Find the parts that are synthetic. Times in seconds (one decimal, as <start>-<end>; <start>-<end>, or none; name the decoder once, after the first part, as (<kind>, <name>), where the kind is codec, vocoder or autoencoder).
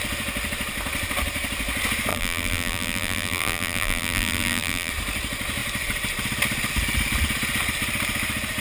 2.1-4.9 (vocoder, BigVGAN v2)